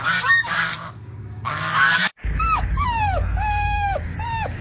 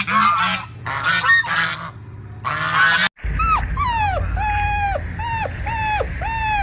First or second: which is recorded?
second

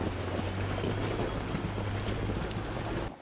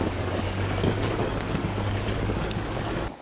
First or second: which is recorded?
first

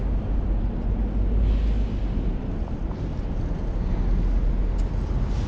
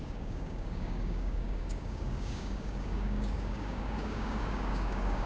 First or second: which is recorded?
first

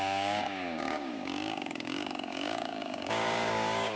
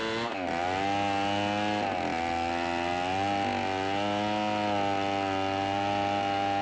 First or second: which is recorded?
second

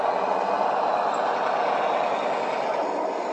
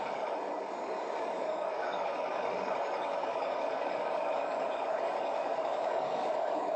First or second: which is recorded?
first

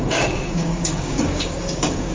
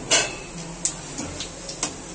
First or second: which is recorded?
second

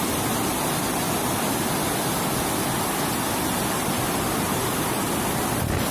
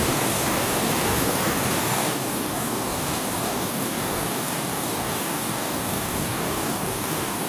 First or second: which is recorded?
first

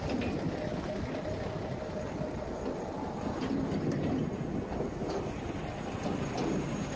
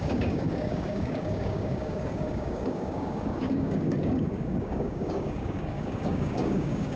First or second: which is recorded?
first